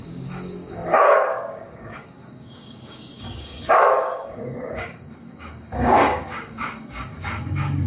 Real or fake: fake